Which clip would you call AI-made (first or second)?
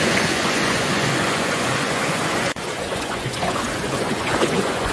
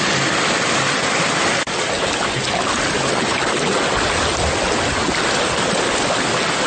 first